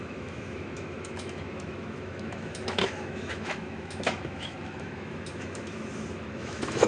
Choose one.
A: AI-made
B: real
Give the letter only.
A